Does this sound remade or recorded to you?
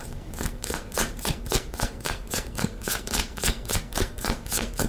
remade